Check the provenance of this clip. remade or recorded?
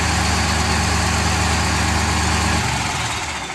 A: recorded